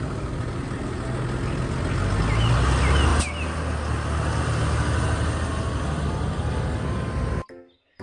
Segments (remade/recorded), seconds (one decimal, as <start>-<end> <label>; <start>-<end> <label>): 0.0-8.0 recorded